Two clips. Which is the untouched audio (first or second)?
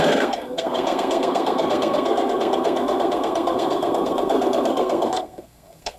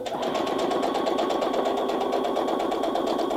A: second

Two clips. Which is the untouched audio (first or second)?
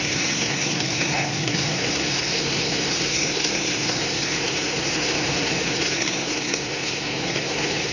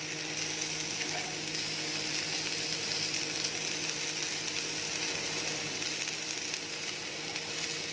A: second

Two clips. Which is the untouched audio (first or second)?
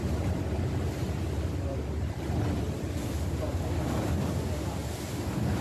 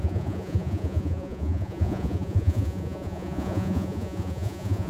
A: first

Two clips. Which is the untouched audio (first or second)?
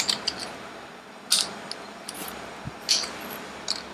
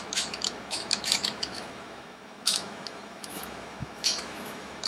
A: first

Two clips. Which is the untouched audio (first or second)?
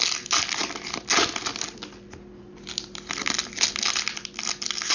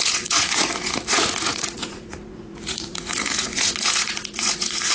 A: first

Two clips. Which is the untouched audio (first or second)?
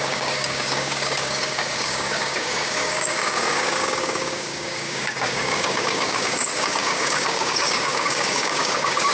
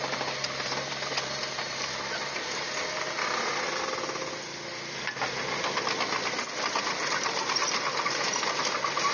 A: second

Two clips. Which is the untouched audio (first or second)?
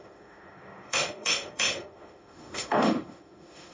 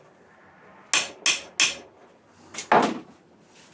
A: second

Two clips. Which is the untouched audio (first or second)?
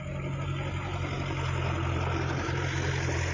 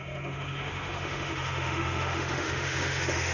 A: first